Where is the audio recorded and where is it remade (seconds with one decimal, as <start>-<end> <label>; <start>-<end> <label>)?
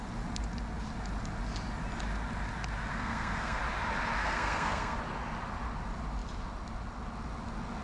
0.0-2.9 recorded; 2.9-3.6 remade; 3.6-4.2 recorded; 4.2-5.0 remade; 5.0-7.8 recorded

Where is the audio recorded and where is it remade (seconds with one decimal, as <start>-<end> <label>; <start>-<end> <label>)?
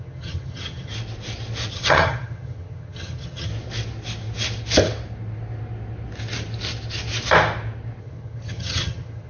0.0-0.9 remade; 0.9-1.7 recorded; 1.7-3.5 remade; 3.5-8.0 recorded; 8.0-9.3 remade